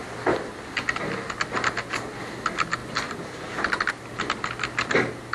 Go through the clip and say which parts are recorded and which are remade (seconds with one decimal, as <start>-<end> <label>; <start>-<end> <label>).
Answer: 0.0-2.8 recorded; 2.8-3.9 remade; 3.9-5.3 recorded